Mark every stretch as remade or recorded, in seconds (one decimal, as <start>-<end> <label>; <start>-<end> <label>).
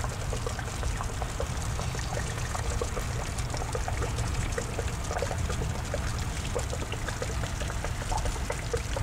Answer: 0.0-2.1 recorded; 2.1-2.9 remade; 2.9-4.0 recorded; 4.0-4.6 remade; 4.6-9.0 recorded